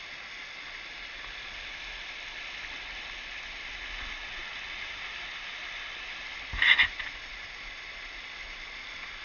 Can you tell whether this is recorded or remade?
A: recorded